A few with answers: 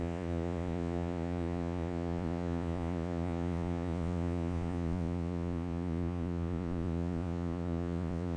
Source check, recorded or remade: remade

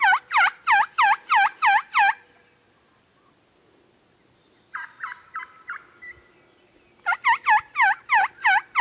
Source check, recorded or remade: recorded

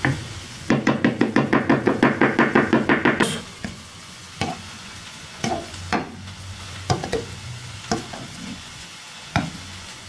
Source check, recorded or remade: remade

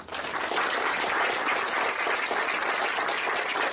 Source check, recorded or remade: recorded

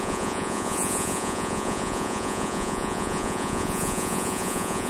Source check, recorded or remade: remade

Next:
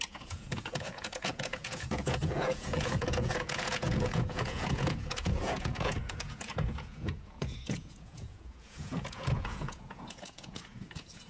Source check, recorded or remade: remade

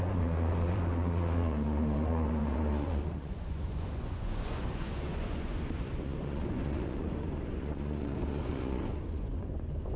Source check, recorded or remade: remade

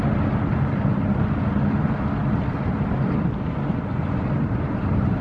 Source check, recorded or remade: recorded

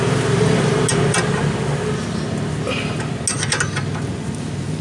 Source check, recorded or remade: recorded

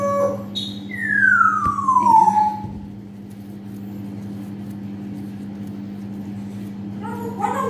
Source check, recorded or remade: recorded